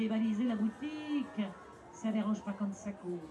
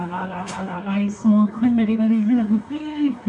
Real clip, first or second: first